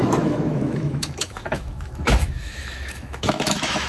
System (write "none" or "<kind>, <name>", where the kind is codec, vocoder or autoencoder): autoencoder, DAC-VAE